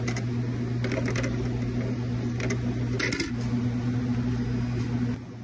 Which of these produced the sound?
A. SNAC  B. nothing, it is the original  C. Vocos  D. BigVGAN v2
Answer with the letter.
B